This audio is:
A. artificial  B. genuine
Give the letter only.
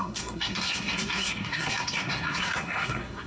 A